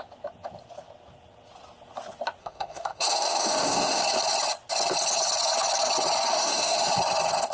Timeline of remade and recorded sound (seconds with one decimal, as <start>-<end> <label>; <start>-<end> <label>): 0.0-2.4 recorded; 2.4-4.0 remade; 4.0-6.3 recorded; 6.3-6.9 remade; 6.9-7.5 recorded

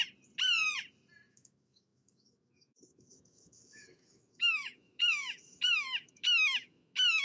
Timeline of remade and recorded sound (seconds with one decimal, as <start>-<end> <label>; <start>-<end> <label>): 0.0-1.3 recorded; 1.3-7.2 remade

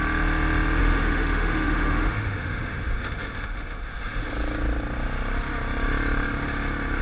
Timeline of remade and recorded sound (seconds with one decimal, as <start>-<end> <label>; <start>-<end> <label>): 0.0-0.8 recorded; 0.8-4.3 remade; 4.3-7.0 recorded

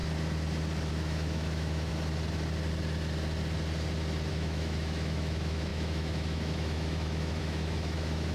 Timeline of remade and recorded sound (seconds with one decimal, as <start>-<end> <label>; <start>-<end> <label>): 0.0-0.9 recorded; 0.9-1.9 remade; 1.9-4.3 recorded; 4.3-8.3 remade

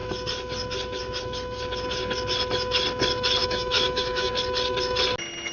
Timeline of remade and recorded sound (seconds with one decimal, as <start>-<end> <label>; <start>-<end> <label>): 0.0-3.4 recorded; 3.4-4.3 remade; 4.3-5.5 recorded

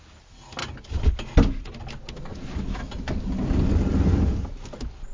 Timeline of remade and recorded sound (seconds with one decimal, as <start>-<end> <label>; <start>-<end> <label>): 0.0-5.1 recorded